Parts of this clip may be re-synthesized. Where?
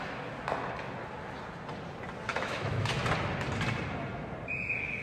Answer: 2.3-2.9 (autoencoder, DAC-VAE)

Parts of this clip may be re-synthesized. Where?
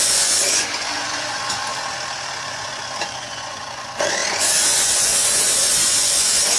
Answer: 0.0-1.6 (vocoder, Vocos); 2.4-6.6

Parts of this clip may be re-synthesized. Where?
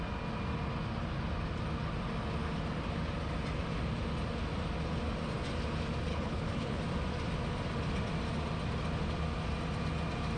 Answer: 6.1-6.8 (codec, HILCodec)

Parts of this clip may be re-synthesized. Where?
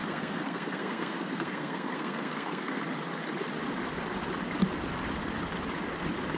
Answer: 0.0-2.8 (codec, SNAC)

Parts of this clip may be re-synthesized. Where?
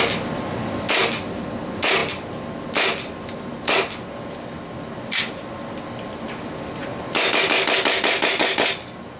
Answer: none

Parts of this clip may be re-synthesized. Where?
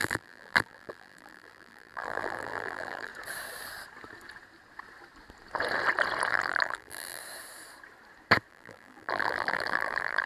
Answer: 0.0-3.1 (vocoder, BigVGAN v2); 6.3-7.2; 8.5-10.3